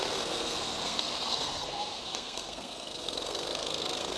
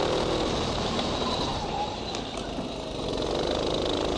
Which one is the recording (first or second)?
second